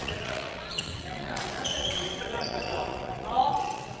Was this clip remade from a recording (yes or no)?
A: yes